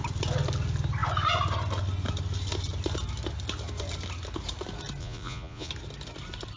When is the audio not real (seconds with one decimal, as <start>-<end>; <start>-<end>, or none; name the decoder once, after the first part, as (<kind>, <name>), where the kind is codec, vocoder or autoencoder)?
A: 5.0-5.7 (vocoder, Vocos)

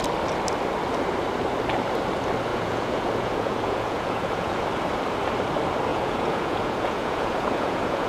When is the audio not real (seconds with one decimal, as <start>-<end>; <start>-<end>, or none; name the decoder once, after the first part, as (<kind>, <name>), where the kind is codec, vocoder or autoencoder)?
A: 2.5-4.6 (vocoder, Vocos); 5.9-8.1

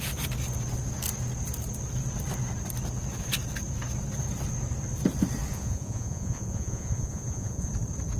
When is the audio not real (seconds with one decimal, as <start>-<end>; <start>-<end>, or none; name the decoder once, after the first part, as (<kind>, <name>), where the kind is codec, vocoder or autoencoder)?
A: 5.5-7.7 (vocoder, Vocos)

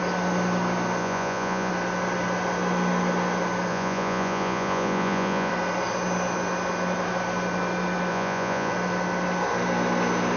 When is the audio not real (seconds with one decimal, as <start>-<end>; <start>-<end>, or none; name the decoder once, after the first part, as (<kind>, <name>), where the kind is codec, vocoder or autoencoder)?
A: 1.0-1.7 (vocoder, Vocos); 3.7-5.5; 8.1-8.7

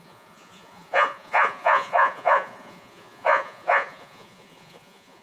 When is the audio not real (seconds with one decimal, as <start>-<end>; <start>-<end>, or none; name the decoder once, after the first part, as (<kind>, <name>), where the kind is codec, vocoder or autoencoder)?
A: 0.0-5.2 (vocoder, Vocos)

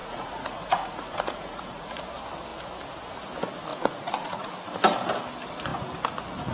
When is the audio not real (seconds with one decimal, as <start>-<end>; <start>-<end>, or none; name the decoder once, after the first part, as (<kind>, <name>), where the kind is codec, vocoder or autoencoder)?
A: 0.0-2.0 (vocoder, Vocos); 3.7-4.5

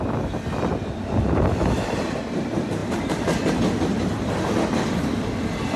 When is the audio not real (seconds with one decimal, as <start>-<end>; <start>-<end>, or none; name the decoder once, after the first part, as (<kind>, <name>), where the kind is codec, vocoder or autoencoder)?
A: none